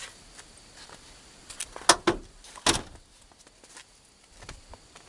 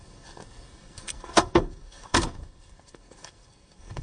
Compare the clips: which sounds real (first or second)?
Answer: first